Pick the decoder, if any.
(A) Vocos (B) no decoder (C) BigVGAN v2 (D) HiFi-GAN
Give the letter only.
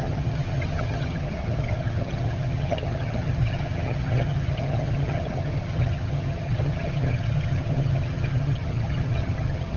D